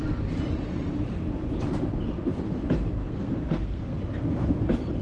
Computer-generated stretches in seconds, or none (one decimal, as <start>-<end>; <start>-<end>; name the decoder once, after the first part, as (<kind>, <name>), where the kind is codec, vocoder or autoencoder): 3.0-4.0 (codec, SNAC)